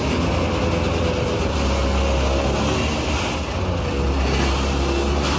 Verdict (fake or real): real